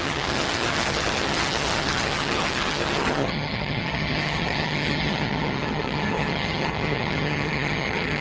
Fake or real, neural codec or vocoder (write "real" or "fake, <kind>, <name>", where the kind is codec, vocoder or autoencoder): fake, vocoder, HiFi-GAN